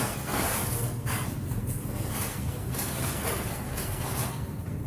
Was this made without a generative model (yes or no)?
no